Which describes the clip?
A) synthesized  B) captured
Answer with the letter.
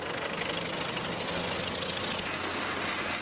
B